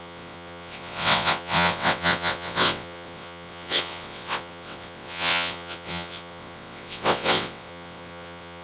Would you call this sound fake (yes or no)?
yes